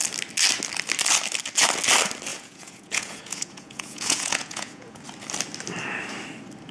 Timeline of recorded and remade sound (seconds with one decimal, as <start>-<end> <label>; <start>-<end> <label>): 0.0-2.3 recorded; 2.3-5.0 remade; 5.0-6.7 recorded